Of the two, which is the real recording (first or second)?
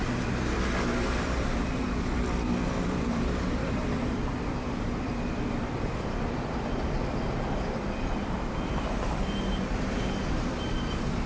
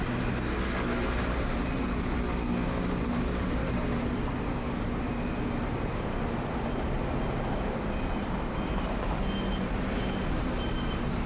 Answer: second